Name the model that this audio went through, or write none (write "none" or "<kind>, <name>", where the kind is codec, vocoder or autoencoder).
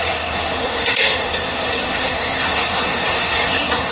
codec, SNAC